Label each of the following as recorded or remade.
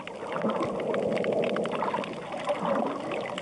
recorded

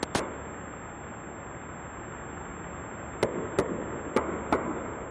recorded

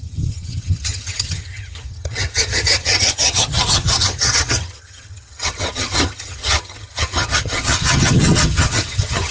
remade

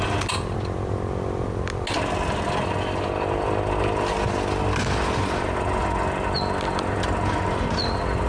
recorded